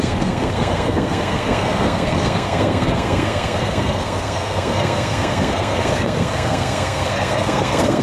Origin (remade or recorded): remade